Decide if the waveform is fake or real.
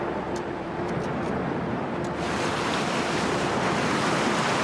fake